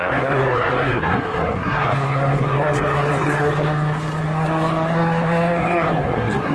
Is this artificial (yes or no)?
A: yes